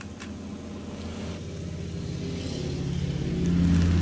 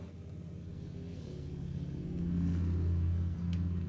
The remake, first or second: second